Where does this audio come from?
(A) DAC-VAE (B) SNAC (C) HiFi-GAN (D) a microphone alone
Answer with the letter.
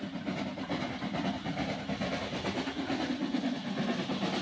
D